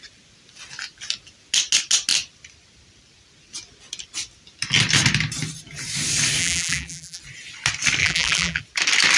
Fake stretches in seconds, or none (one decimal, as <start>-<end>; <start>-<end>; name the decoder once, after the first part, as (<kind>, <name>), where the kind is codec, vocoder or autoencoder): 6.4-7.2 (vocoder, BigVGAN v2); 8.0-8.6